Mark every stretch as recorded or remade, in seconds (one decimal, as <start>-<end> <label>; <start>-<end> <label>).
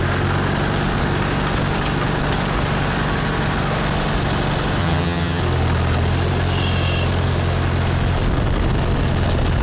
0.0-4.8 recorded; 4.8-5.4 remade; 5.4-9.6 recorded